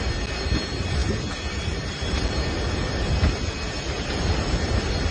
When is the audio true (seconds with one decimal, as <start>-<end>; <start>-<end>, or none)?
0.0-5.1